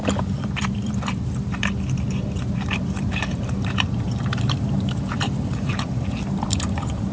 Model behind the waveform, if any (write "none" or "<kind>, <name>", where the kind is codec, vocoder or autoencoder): vocoder, BigVGAN v2